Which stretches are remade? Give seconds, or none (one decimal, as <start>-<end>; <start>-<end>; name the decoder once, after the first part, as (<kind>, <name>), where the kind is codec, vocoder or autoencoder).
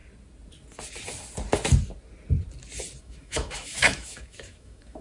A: 3.0-5.0 (autoencoder, DAC-VAE)